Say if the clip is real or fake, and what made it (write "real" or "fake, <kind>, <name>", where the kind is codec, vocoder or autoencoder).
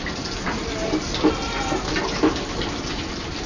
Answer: real